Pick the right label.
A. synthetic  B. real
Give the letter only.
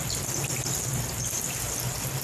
B